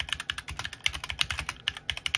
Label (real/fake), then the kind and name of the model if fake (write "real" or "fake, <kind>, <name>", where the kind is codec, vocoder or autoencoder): real